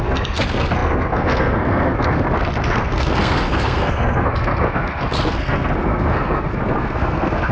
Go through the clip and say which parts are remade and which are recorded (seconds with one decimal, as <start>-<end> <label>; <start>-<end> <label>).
0.0-7.5 remade